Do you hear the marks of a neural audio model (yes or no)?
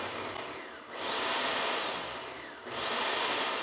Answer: no